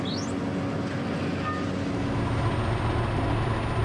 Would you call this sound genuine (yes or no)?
yes